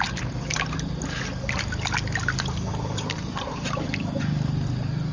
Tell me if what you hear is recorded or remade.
recorded